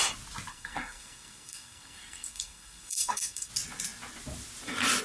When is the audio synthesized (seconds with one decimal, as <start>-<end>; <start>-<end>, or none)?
0.5-3.5